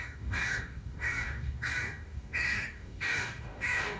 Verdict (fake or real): fake